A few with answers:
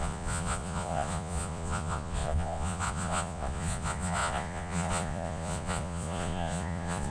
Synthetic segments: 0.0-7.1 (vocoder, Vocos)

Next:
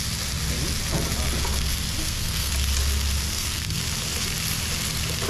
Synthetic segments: 2.0-2.5 (codec, SNAC); 3.3-3.8